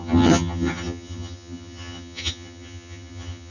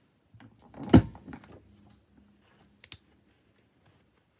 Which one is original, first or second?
second